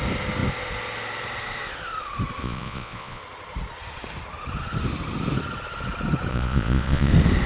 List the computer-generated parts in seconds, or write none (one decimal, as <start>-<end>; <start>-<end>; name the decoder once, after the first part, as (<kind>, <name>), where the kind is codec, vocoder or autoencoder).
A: 2.4-3.2 (vocoder, Vocos); 6.3-7.1